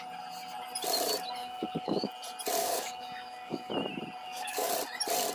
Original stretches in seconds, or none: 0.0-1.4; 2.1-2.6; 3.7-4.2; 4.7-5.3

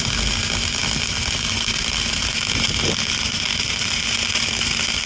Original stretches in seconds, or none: 0.0-5.1